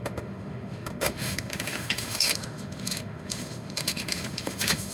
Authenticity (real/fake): fake